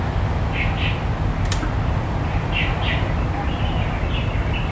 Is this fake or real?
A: real